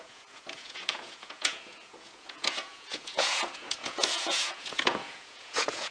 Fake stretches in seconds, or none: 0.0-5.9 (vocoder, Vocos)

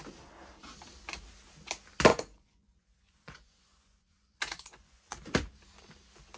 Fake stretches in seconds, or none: 2.1-5.2 (vocoder, Vocos)

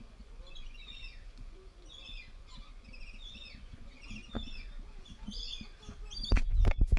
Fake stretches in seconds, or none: 0.0-5.5 (vocoder, Vocos); 6.3-7.0

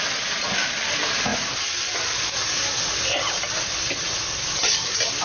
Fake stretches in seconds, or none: none